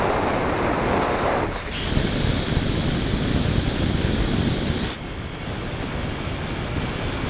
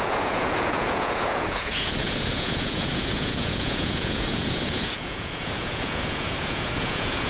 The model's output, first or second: second